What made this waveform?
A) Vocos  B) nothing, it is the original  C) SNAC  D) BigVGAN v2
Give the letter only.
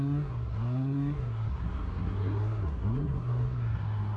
C